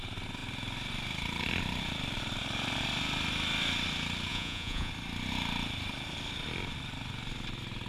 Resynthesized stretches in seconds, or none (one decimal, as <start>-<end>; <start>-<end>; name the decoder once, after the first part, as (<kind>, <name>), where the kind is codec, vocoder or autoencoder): 4.3-4.9 (vocoder, Vocos)